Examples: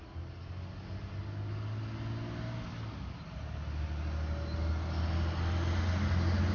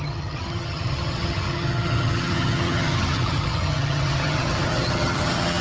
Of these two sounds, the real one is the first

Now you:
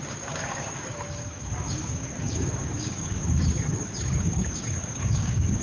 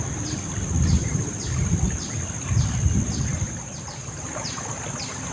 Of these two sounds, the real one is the second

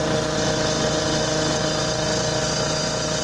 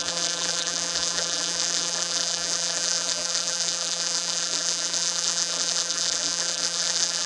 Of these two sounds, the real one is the first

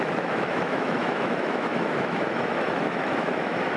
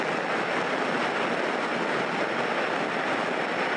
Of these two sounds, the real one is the second